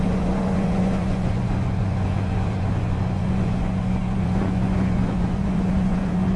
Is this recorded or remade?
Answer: remade